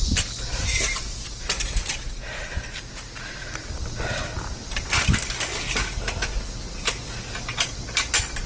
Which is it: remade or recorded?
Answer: recorded